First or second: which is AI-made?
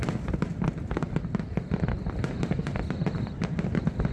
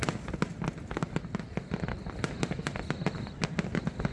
first